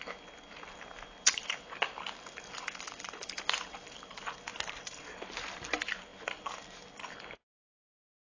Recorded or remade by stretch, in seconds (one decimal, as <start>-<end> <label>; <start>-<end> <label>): 0.0-8.3 recorded